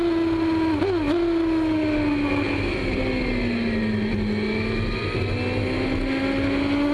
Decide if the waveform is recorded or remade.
recorded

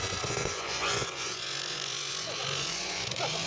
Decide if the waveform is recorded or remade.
remade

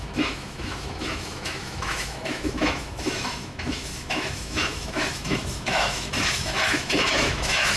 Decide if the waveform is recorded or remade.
remade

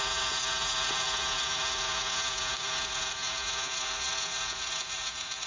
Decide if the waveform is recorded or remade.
remade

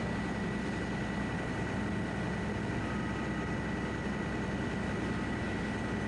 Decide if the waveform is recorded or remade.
recorded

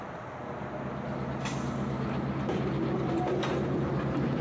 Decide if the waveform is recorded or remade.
recorded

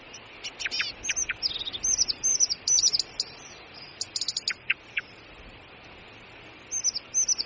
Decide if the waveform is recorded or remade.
recorded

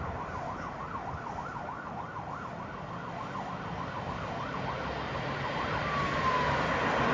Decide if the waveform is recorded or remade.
recorded